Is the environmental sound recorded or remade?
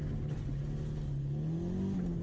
recorded